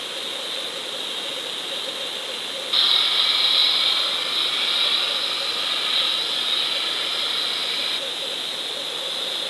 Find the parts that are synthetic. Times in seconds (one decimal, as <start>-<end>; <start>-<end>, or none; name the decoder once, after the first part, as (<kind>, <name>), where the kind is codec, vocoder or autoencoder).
none